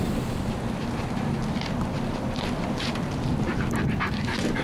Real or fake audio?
real